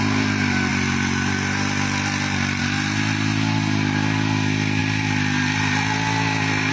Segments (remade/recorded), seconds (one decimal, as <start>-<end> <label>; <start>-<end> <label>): 0.0-6.7 recorded